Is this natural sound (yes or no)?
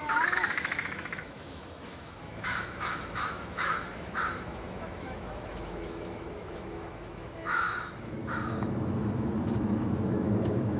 no